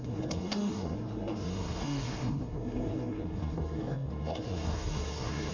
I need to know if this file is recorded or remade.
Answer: remade